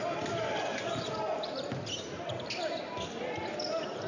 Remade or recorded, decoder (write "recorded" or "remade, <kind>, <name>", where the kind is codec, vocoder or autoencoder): recorded